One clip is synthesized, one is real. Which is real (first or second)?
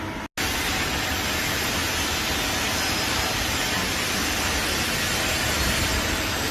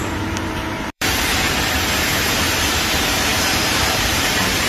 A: first